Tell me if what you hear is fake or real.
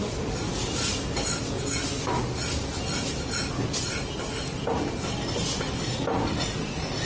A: real